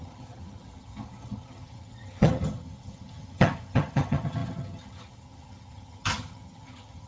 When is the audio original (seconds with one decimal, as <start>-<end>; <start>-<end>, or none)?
none